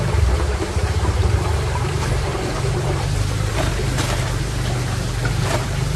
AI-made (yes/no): yes